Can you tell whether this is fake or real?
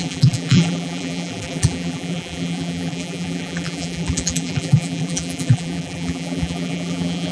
fake